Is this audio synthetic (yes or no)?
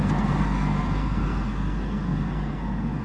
yes